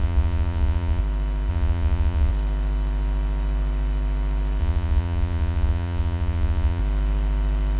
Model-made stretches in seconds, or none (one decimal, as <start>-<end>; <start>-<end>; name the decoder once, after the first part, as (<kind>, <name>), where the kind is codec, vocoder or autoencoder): 0.0-1.0 (vocoder, Vocos); 1.5-2.3; 4.6-6.8